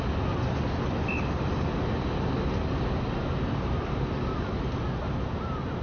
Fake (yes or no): no